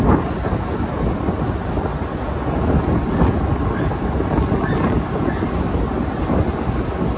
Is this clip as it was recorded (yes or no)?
yes